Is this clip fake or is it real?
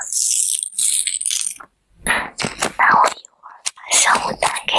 real